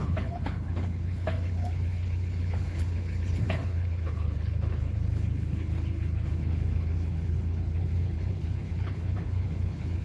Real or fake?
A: fake